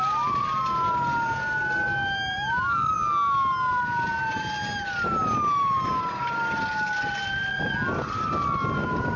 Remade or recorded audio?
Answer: recorded